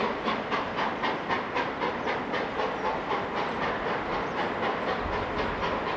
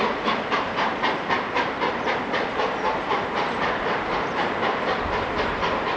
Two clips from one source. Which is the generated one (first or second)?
second